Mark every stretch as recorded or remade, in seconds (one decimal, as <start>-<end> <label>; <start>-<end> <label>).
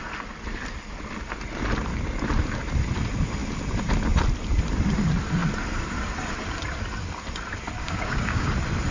0.0-7.8 recorded; 7.8-8.5 remade; 8.5-8.9 recorded